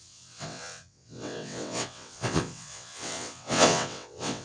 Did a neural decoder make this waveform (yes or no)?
yes